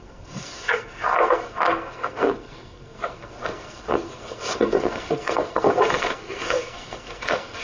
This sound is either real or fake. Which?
fake